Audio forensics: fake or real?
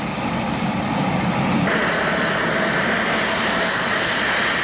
real